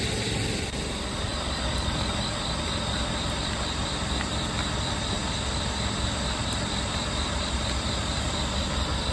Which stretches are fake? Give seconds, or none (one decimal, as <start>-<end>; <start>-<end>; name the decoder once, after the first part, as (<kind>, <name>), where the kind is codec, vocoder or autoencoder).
none